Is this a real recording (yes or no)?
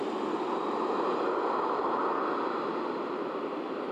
yes